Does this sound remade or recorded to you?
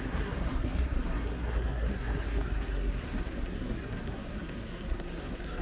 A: remade